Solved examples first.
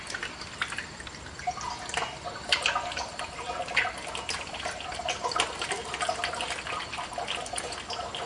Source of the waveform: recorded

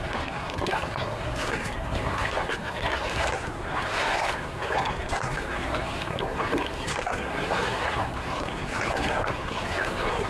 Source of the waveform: remade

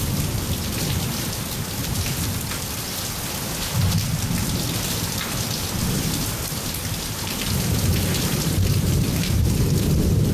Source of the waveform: remade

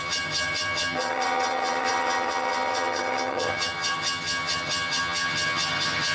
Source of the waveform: remade